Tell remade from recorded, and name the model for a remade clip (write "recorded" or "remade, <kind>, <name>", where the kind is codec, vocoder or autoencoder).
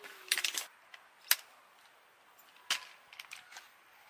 recorded